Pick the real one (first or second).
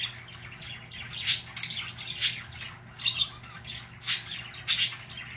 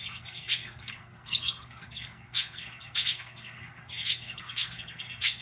first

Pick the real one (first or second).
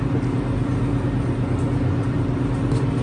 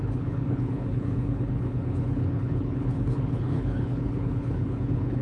first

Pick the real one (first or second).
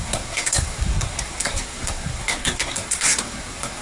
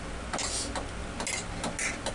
second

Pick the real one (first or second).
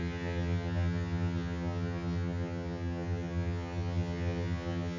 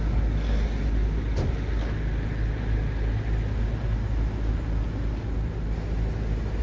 second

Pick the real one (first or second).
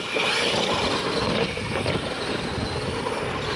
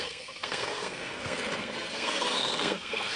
first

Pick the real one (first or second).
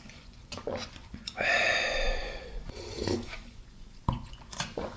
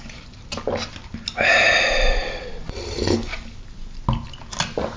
second